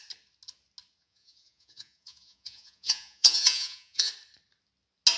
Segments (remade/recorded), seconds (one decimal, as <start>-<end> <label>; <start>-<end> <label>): 0.0-1.0 recorded; 1.0-4.1 remade; 4.1-5.2 recorded